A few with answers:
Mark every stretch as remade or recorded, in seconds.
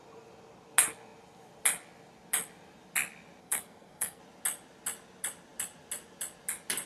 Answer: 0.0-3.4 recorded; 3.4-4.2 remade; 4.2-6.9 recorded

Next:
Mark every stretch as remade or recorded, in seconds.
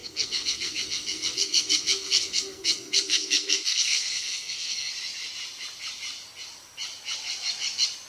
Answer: 0.0-4.9 remade; 4.9-8.1 recorded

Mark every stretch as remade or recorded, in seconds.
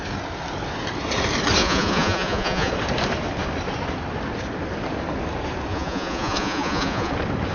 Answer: 0.0-1.6 recorded; 1.6-2.7 remade; 2.7-5.7 recorded; 5.7-7.1 remade; 7.1-7.5 recorded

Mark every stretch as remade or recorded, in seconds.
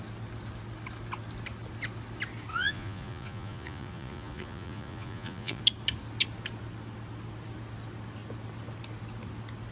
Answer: 0.0-2.5 recorded; 2.5-5.6 remade; 5.6-9.7 recorded